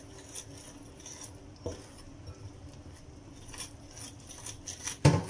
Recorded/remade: recorded